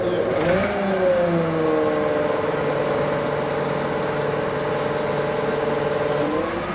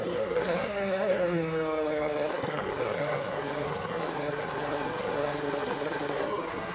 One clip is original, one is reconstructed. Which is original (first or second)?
first